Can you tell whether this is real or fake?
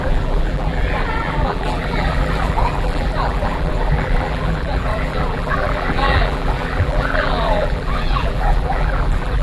fake